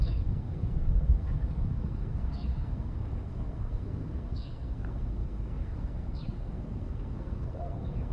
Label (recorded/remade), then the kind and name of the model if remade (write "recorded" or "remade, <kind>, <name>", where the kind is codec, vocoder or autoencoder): remade, codec, SNAC